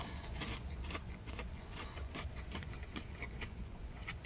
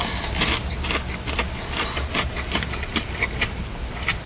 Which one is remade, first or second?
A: first